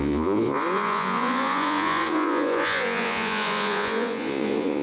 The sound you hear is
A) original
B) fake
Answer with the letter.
B